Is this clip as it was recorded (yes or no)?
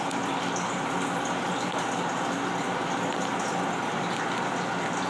yes